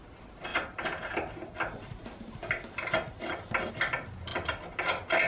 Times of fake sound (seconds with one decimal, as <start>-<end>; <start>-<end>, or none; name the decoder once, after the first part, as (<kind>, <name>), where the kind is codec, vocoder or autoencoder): none